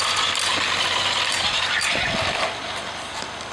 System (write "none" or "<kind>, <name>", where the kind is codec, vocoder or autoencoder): none